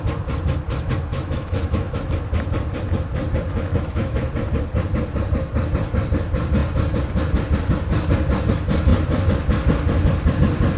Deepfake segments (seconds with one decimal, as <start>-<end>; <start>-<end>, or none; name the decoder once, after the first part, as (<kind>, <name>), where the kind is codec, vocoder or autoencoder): 1.1-2.0 (autoencoder, DAC-VAE); 3.5-4.3